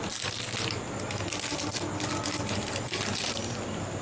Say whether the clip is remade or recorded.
recorded